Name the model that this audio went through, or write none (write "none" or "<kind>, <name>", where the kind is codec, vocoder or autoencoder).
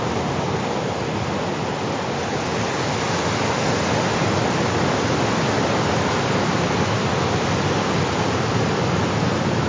none